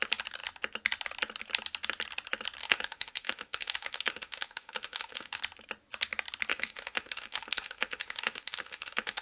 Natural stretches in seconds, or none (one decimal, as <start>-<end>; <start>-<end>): 0.0-2.6; 5.4-6.5